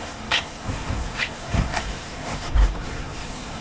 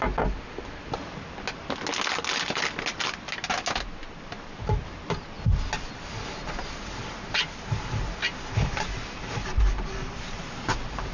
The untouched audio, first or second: second